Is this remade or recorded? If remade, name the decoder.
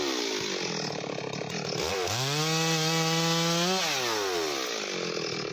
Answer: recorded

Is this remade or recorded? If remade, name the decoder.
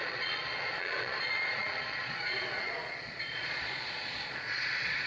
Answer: remade, vocoder, Vocos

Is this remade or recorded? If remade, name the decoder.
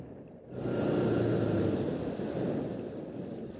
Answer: recorded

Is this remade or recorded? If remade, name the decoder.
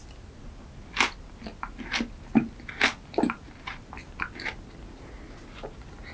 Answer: recorded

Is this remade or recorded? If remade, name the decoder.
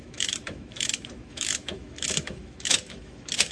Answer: remade, autoencoder, DAC-VAE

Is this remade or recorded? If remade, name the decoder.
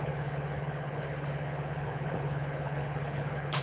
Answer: remade, codec, HILCodec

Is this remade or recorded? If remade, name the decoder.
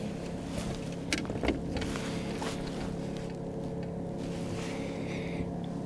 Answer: recorded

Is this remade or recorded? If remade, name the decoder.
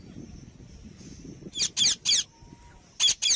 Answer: recorded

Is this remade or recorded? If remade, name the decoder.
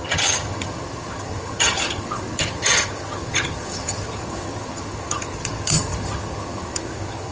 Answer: remade, vocoder, HiFi-GAN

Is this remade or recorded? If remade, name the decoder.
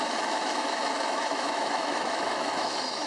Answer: remade, autoencoder, DAC-VAE